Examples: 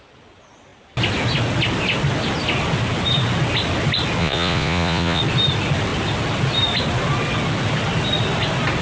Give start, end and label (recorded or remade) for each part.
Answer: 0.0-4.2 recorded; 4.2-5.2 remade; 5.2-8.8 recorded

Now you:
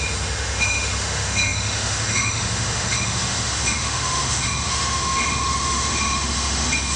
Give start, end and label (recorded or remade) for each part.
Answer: 0.0-7.0 remade